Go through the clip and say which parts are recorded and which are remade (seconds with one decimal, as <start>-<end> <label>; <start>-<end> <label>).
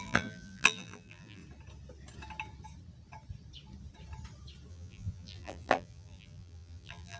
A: 0.0-1.4 remade; 1.4-4.7 recorded; 4.7-7.2 remade